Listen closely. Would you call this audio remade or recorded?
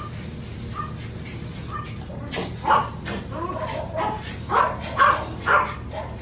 recorded